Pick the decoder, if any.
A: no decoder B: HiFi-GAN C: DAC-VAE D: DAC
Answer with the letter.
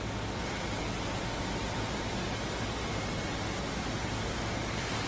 A